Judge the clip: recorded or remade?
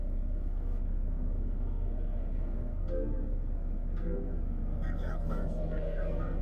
remade